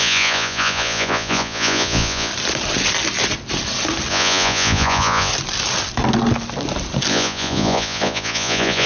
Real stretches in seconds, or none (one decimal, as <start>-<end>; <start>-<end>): 2.3-4.1; 5.3-7.1